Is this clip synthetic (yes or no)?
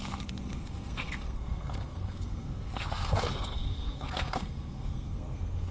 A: yes